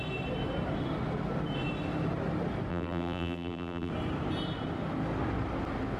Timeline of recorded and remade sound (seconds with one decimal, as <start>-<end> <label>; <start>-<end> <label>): 0.0-2.7 recorded; 2.7-3.9 remade; 3.9-6.0 recorded